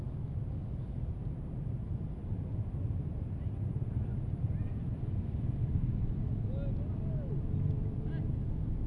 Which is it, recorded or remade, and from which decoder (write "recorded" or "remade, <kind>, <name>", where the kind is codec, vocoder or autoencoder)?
recorded